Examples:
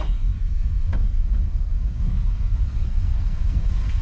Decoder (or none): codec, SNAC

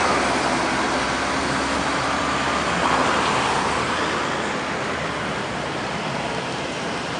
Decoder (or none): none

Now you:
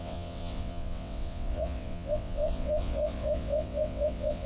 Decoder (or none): vocoder, WaveNeXt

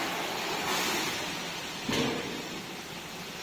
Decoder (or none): none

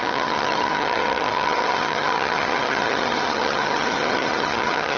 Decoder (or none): vocoder, HiFi-GAN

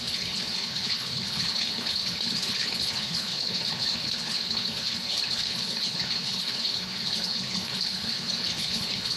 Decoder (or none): codec, HILCodec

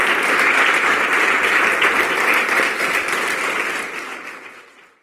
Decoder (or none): none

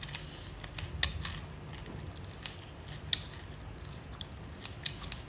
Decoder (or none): none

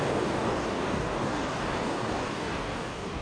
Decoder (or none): codec, DAC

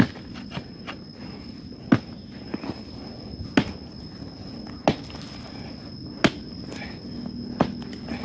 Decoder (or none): none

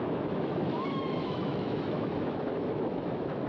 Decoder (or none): autoencoder, DAC-VAE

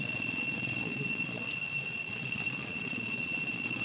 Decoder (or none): vocoder, Vocos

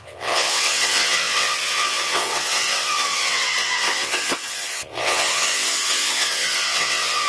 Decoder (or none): vocoder, WaveNeXt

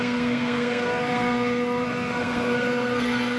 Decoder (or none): codec, SNAC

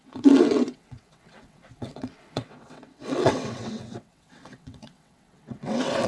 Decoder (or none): vocoder, WaveNeXt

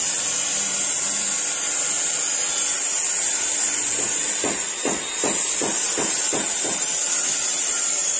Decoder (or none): none